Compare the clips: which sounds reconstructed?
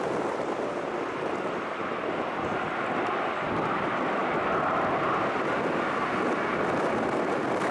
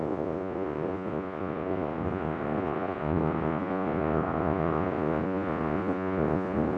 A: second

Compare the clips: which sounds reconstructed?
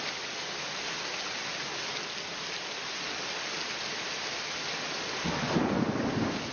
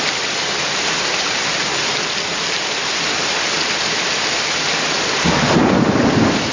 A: second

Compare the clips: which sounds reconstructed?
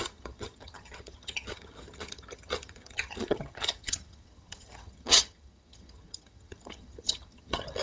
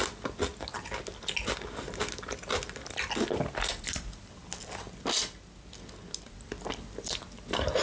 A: first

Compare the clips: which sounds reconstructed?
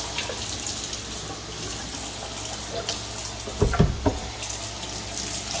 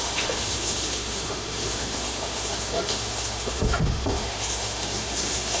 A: second